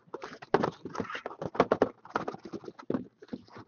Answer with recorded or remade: recorded